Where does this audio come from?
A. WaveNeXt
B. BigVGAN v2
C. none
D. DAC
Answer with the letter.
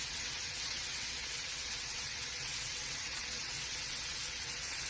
A